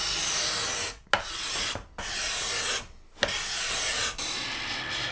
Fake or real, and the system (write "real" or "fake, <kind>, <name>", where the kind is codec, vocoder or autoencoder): real